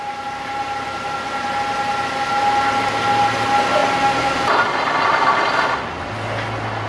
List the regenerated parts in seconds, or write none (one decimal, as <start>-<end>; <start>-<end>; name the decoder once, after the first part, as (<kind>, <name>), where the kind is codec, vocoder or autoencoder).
none